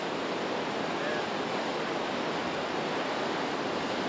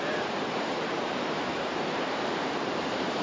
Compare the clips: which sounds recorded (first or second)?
first